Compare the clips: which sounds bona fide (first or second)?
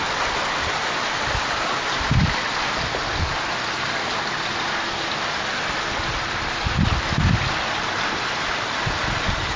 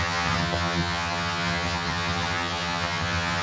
first